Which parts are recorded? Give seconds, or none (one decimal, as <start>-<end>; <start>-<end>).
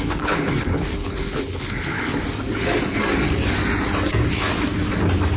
2.2-5.4